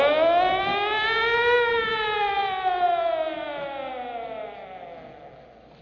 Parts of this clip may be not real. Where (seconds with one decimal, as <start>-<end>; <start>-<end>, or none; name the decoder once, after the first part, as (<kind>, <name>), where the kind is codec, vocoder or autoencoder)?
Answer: none